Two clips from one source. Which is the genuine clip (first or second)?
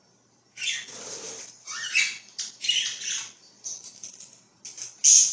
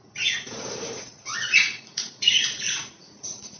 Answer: first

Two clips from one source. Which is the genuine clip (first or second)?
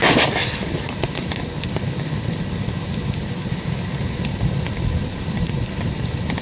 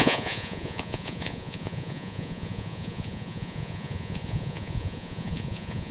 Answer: first